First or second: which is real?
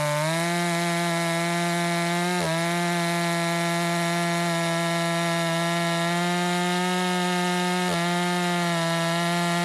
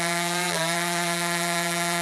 first